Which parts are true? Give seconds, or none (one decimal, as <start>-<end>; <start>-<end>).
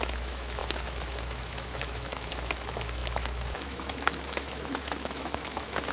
none